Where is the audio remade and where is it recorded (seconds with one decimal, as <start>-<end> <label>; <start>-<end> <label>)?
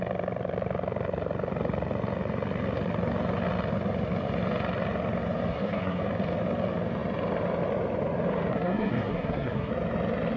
0.0-5.5 recorded; 5.5-6.0 remade; 6.0-8.5 recorded; 8.5-9.7 remade; 9.7-10.4 recorded